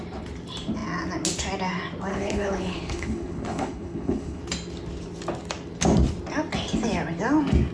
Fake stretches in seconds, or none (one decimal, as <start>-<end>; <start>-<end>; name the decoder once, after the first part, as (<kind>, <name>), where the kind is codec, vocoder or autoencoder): 2.1-4.4 (codec, HILCodec)